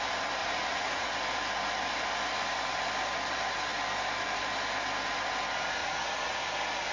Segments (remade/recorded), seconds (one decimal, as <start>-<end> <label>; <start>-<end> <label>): 0.0-0.4 recorded; 0.4-1.1 remade; 1.1-5.8 recorded; 5.8-6.4 remade; 6.4-6.9 recorded